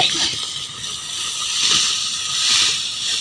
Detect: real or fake real